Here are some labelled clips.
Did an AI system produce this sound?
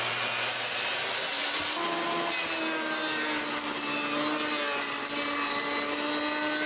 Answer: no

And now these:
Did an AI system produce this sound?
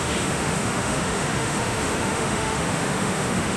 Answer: yes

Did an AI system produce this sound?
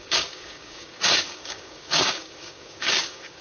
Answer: yes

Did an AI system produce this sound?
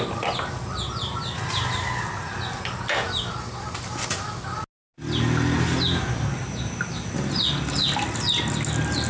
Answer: no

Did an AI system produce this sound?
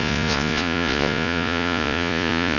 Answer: yes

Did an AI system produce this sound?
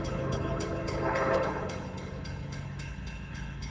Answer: yes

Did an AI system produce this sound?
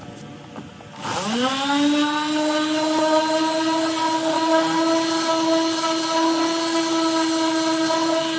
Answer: no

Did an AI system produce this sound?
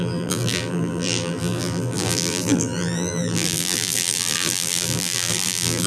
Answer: yes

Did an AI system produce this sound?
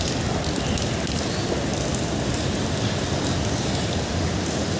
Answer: no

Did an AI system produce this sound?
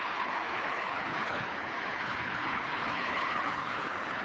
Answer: yes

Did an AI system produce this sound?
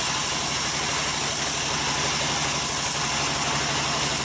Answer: no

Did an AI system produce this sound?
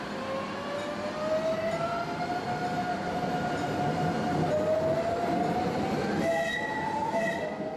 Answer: no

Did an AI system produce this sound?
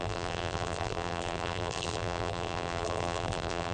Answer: yes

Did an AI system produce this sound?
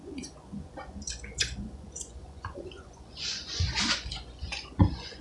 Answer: yes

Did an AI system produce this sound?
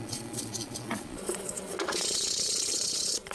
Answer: yes